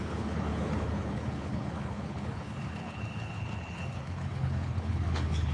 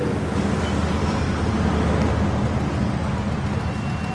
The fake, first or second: first